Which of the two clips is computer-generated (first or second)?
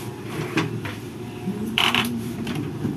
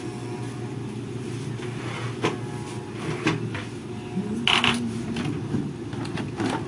first